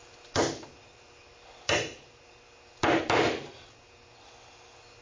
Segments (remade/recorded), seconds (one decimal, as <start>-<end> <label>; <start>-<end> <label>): 0.0-5.0 recorded